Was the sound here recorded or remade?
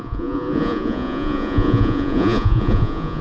remade